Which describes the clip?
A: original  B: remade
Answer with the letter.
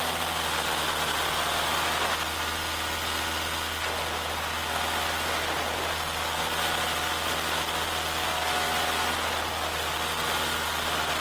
A